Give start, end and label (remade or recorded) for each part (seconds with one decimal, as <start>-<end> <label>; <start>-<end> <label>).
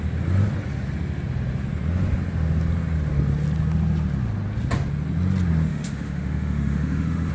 0.0-5.7 recorded; 5.7-7.3 remade